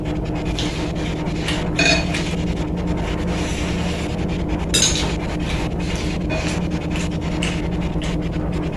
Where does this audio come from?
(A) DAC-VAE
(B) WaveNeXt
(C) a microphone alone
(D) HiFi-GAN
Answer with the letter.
C